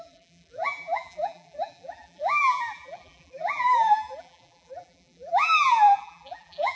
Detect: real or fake fake